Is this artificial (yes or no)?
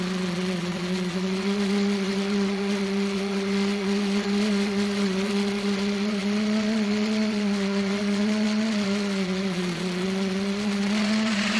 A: yes